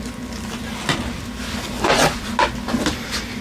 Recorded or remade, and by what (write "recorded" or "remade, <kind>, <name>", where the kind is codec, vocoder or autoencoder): recorded